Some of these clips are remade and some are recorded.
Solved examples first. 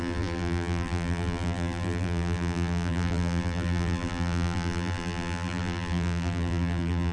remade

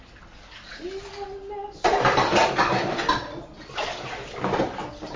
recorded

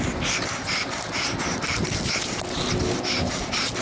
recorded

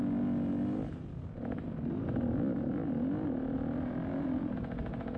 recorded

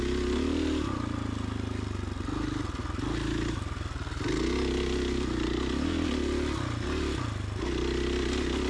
recorded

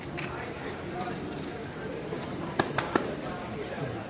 remade